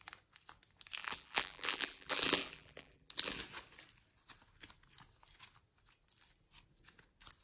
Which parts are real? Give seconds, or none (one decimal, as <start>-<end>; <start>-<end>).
0.0-1.0; 3.4-7.4